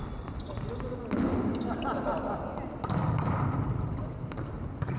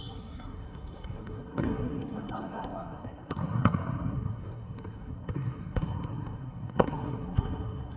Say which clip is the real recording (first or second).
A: first